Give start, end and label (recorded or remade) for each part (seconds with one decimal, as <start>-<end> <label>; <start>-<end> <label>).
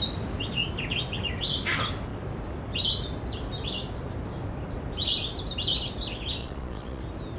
0.0-6.4 recorded; 6.4-7.0 remade; 7.0-7.4 recorded